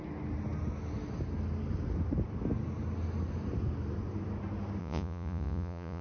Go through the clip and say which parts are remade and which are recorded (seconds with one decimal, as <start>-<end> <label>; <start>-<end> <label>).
0.0-4.8 recorded; 4.8-6.0 remade